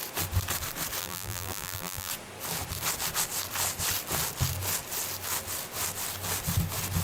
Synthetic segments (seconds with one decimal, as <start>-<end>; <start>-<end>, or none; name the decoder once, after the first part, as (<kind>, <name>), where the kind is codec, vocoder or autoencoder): 1.0-2.1 (vocoder, BigVGAN v2)